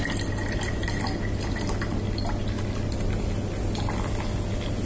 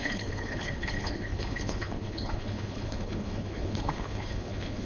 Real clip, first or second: first